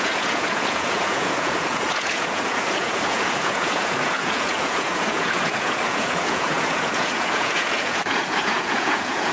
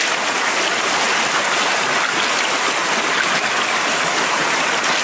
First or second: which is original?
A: second